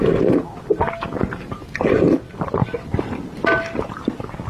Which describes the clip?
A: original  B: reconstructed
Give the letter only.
A